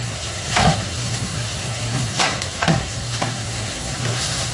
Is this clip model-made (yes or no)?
yes